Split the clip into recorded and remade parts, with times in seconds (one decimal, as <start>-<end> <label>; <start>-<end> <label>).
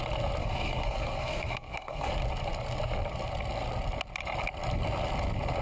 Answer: 0.0-0.4 recorded; 0.4-2.1 remade; 2.1-5.6 recorded